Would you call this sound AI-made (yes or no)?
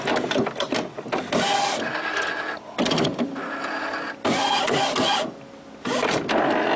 no